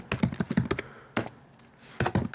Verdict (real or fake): real